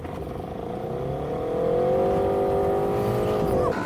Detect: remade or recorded recorded